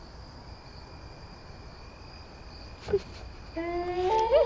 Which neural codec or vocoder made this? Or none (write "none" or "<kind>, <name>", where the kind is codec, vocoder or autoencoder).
none